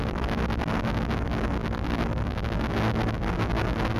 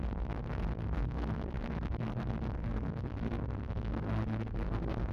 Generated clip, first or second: second